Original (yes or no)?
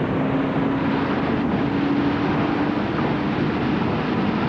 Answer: yes